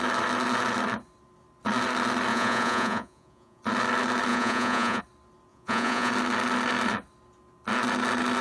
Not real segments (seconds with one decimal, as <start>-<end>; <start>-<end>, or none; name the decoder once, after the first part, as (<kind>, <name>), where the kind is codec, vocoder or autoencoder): 2.3-3.6 (vocoder, Vocos); 4.3-5.0; 5.5-6.1